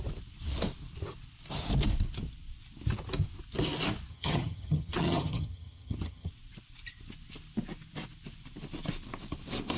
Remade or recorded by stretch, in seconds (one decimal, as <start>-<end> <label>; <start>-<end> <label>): 0.0-4.1 recorded; 4.1-6.3 remade; 6.3-9.8 recorded